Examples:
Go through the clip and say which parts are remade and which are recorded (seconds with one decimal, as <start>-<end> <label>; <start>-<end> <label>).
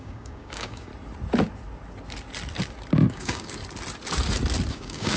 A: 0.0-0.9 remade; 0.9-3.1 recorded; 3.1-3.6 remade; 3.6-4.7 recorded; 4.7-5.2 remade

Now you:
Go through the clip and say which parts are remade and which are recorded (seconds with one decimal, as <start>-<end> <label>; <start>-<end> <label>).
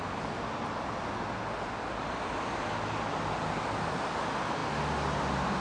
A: 0.0-5.6 recorded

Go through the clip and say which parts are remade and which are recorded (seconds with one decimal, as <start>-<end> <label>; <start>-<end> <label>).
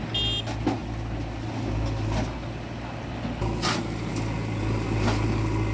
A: 0.0-5.7 recorded